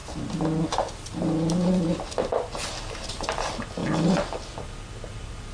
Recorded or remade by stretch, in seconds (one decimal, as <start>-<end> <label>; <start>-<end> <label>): 0.0-5.5 recorded